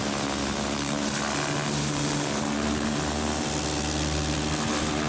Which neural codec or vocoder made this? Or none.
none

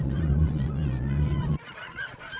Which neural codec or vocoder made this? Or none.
vocoder, Vocos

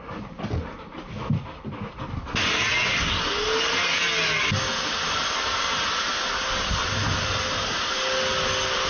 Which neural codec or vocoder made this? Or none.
none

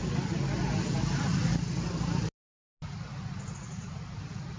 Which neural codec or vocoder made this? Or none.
none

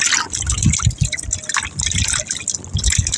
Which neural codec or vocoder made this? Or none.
none